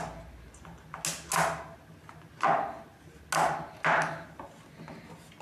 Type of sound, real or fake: real